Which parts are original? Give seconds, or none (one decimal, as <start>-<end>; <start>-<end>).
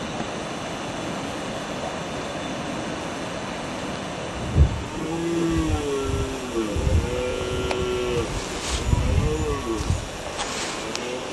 0.0-7.3; 7.8-11.3